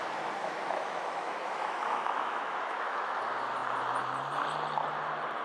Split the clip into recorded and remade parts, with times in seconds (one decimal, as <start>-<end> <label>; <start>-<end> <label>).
0.0-0.4 recorded; 0.4-3.2 remade; 3.2-5.4 recorded